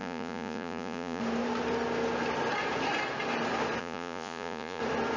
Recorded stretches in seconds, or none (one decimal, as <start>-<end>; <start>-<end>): 1.2-3.8; 4.8-5.2

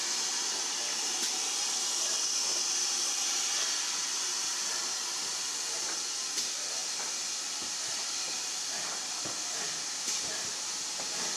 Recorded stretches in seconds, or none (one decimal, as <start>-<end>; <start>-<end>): 0.0-11.4

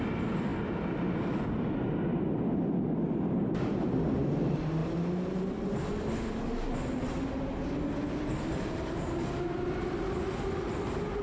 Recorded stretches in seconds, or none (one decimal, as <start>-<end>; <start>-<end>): 0.0-11.2

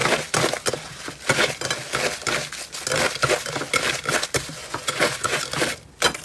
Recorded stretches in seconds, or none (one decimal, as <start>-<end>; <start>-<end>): 0.0-4.6; 5.4-6.2

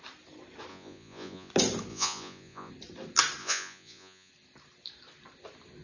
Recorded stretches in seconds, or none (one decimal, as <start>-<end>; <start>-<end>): 0.0-0.7; 1.5-1.9; 2.7-3.4; 4.3-5.8